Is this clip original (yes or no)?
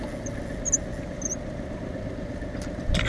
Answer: yes